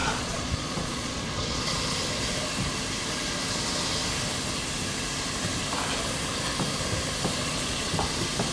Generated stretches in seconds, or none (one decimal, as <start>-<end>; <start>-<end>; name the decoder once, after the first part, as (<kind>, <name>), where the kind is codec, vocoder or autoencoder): 0.0-1.6 (vocoder, Vocos); 7.4-7.9